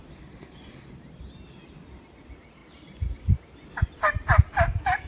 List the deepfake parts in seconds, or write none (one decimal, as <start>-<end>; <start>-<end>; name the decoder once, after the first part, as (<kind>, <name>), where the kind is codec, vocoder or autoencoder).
none